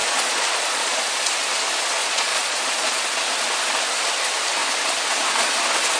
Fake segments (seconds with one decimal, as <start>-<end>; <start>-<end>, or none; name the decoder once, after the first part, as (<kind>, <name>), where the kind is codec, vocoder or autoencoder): 0.0-1.1 (vocoder, Vocos); 2.0-3.0